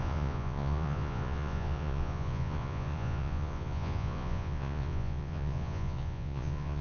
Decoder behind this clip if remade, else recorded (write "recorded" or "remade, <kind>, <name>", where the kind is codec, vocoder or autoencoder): remade, vocoder, Vocos